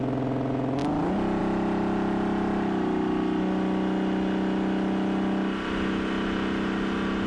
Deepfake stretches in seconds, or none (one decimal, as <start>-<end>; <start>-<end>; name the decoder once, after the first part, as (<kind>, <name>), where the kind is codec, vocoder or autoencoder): none